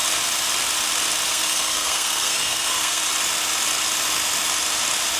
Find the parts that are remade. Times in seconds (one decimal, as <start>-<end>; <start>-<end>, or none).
1.3-3.0